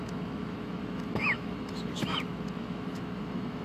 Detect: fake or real fake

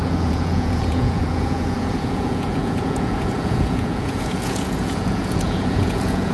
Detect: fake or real fake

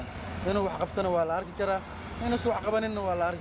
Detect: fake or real real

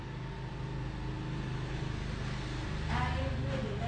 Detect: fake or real real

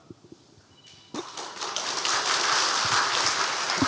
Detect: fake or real real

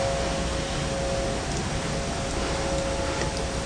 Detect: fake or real real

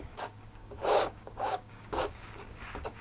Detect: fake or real fake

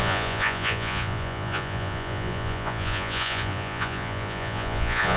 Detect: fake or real fake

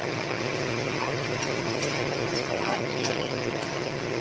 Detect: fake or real fake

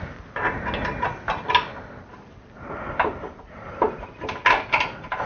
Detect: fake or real real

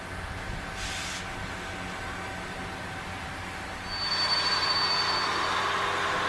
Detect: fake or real real